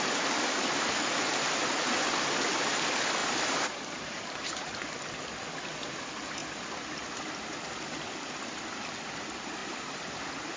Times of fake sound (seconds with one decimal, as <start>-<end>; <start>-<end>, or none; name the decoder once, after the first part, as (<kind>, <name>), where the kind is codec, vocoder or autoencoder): 3.2-4.8 (vocoder, BigVGAN v2); 9.6-10.6